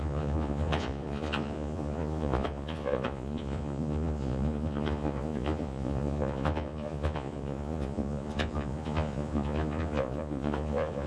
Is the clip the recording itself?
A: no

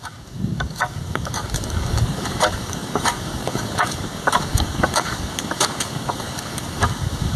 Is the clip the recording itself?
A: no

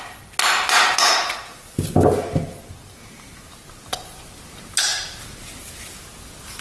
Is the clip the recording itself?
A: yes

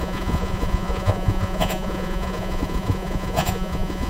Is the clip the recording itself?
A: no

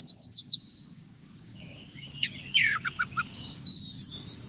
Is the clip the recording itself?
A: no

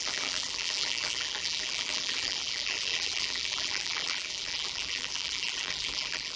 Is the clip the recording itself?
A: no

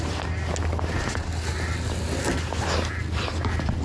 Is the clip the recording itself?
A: yes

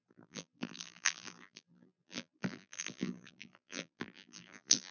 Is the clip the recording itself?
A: no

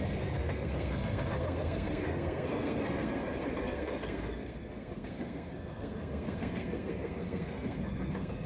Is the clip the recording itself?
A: no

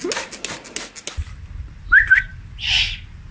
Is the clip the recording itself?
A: yes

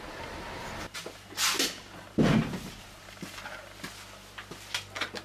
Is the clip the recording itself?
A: yes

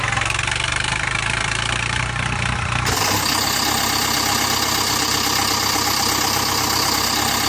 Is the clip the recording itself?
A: yes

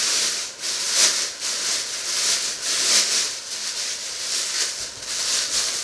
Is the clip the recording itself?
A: yes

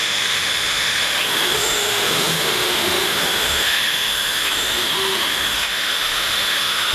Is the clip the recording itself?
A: no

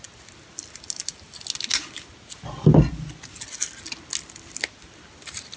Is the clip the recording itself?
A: yes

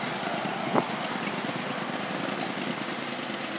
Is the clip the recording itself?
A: yes